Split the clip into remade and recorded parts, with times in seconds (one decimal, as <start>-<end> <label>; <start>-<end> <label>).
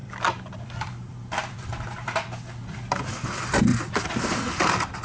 0.0-5.0 remade